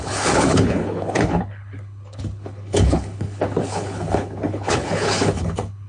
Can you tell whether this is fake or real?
fake